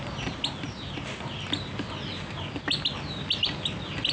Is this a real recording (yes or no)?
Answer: yes